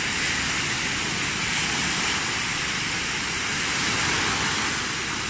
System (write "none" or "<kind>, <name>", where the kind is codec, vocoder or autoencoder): none